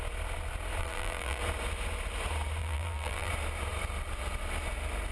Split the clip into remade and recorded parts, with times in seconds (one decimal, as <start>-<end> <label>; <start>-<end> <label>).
0.0-0.8 recorded; 0.8-1.4 remade; 1.4-2.6 recorded; 2.6-3.3 remade; 3.3-5.1 recorded

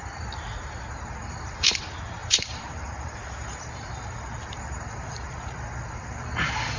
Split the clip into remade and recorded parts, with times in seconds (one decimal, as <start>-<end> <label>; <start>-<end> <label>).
0.0-1.2 recorded; 1.2-1.8 remade; 1.8-2.2 recorded; 2.2-6.3 remade; 6.3-6.8 recorded

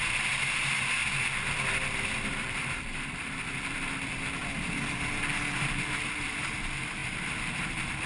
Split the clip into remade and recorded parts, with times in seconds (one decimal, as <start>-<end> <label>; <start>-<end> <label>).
0.0-1.0 remade; 1.0-2.3 recorded; 2.3-4.4 remade; 4.4-5.6 recorded; 5.6-8.1 remade

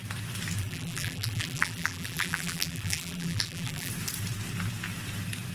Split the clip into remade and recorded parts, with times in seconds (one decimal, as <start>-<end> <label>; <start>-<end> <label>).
0.0-0.6 recorded; 0.6-3.9 remade; 3.9-5.5 recorded

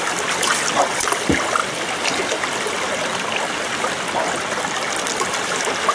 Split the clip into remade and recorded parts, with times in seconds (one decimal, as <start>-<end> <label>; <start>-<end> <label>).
0.0-5.9 recorded